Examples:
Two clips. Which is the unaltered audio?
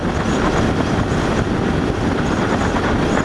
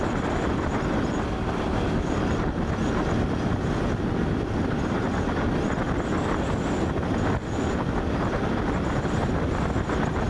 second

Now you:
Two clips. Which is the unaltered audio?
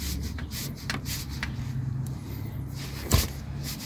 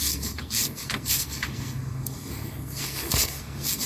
first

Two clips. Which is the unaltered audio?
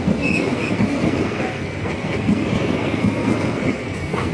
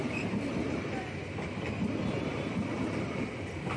second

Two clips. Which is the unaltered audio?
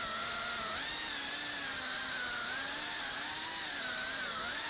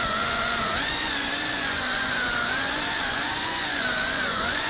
first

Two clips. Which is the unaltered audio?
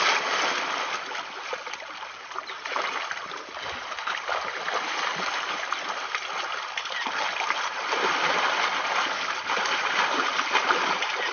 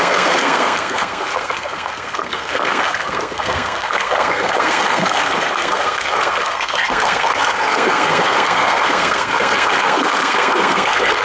first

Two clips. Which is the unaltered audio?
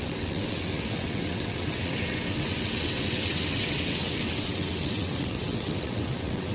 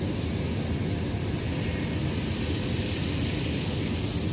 second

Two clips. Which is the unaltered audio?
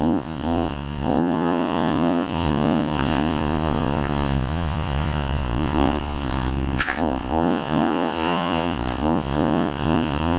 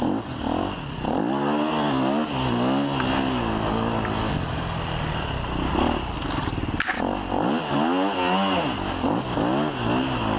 second